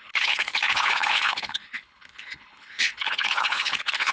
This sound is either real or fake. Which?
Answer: fake